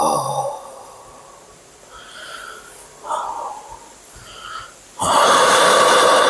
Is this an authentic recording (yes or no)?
no